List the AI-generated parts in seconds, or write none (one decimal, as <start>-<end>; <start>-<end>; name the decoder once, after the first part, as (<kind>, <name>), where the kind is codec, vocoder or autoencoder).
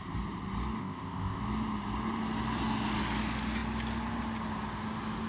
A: 0.8-1.4 (codec, ZipCodec)